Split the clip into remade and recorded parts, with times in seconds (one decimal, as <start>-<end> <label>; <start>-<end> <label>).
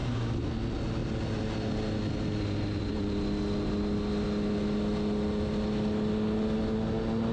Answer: 0.0-7.3 recorded